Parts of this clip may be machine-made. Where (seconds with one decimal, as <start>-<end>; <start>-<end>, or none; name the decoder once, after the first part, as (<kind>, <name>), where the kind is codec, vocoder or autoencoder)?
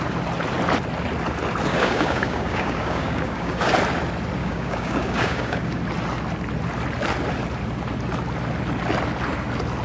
1.7-3.7 (codec, DAC); 4.4-5.8